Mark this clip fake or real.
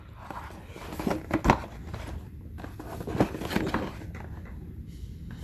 real